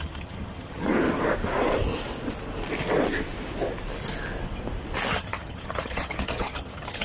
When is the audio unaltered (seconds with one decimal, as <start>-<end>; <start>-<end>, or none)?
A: 0.9-5.1